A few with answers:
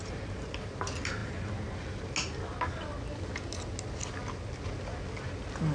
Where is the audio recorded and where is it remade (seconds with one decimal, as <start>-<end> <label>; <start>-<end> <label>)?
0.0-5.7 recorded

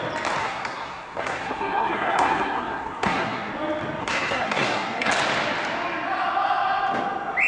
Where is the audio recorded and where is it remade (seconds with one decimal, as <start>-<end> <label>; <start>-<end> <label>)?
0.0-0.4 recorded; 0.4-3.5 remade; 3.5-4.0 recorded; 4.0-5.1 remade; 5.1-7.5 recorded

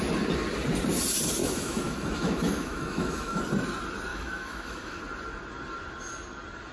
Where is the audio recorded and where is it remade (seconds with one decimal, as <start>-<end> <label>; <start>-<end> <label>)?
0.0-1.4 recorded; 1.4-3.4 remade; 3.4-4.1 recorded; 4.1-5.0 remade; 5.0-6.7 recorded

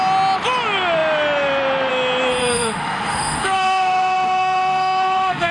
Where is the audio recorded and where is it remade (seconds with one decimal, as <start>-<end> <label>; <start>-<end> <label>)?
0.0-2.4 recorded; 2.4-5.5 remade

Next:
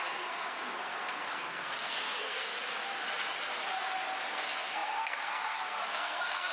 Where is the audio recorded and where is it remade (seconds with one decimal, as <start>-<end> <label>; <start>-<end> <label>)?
0.0-2.5 remade; 2.5-4.3 recorded; 4.3-6.5 remade